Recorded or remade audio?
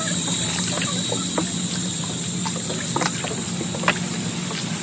recorded